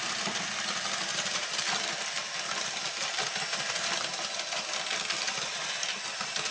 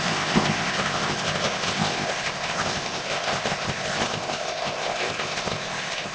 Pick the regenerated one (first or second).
second